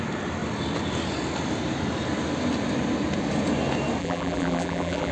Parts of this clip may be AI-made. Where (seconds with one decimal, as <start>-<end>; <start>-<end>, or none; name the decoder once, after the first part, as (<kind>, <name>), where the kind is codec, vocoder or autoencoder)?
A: 4.0-5.1 (vocoder, BigVGAN v2)